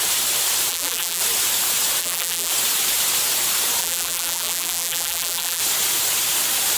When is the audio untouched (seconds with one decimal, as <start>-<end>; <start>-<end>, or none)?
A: 0.0-0.7; 1.2-2.0; 2.5-3.8; 5.6-6.8